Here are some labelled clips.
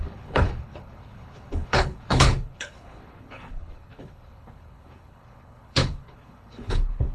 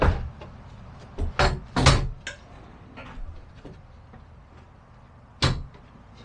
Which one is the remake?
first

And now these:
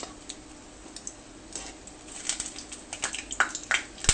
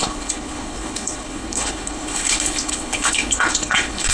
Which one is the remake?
second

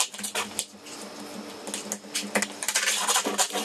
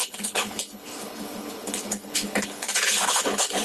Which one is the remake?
second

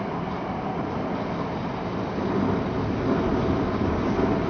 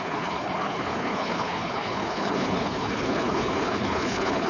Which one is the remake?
second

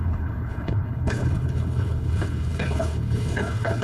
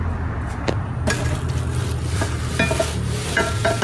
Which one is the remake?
first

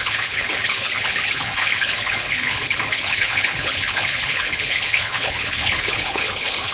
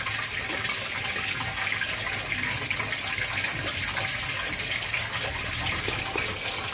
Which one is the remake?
first